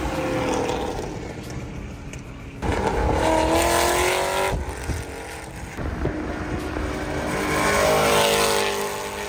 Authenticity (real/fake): real